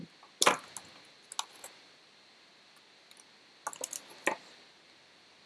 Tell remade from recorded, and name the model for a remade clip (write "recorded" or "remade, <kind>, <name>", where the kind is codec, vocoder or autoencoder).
recorded